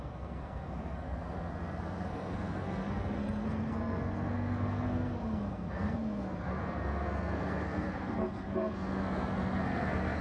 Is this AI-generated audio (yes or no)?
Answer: yes